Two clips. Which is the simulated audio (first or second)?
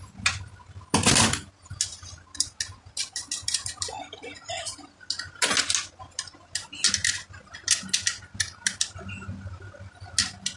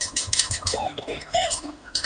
second